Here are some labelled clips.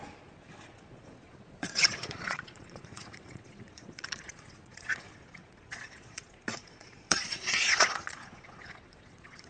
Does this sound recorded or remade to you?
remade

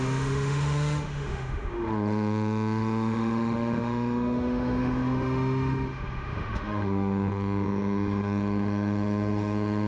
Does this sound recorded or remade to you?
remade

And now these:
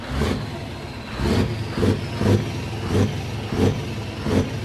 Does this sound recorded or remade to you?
recorded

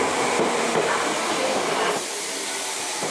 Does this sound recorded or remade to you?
remade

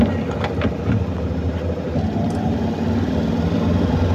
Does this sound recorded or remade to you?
recorded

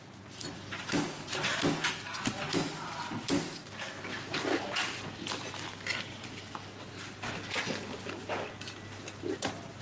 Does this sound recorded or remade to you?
recorded